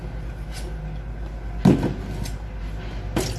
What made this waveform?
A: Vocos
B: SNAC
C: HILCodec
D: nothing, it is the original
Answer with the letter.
D